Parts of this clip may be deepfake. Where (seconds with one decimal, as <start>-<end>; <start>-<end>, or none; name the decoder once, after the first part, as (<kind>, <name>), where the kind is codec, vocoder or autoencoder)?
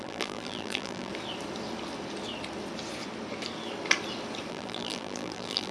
0.0-1.1 (vocoder, BigVGAN v2); 4.5-5.7